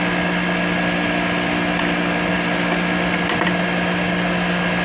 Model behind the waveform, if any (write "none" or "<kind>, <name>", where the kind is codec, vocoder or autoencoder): none